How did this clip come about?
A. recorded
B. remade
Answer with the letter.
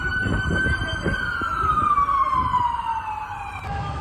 A